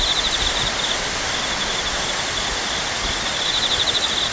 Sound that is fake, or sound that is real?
real